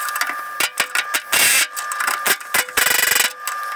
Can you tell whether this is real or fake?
real